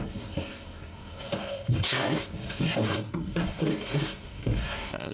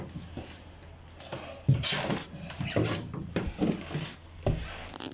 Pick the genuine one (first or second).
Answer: second